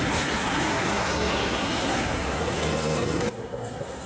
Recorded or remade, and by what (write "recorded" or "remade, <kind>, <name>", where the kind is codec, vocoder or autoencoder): remade, codec, SNAC